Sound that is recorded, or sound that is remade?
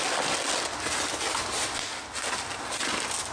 recorded